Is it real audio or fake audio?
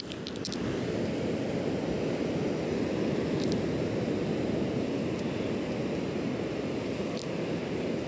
real